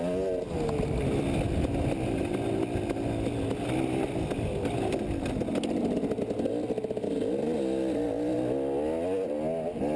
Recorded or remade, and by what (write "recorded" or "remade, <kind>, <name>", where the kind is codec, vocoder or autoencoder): recorded